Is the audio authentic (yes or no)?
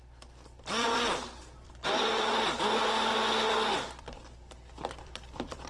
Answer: no